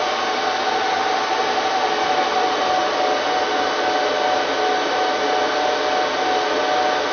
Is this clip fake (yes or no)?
no